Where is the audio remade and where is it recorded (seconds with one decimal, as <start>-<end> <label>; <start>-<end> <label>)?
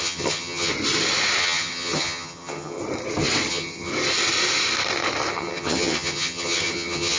0.0-0.7 remade; 0.7-1.4 recorded; 1.4-2.8 remade; 2.8-3.5 recorded; 3.5-3.9 remade; 3.9-5.3 recorded; 5.3-7.2 remade